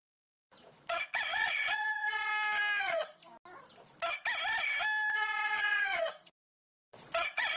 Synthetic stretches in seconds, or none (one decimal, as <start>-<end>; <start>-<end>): 0.0-2.3; 2.8-3.2; 5.1-7.6